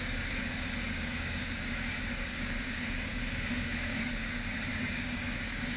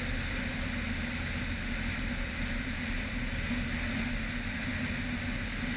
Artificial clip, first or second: first